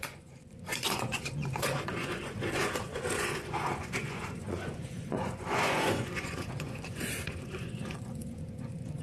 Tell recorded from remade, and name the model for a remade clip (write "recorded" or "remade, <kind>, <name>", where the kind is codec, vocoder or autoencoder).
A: remade, vocoder, Vocos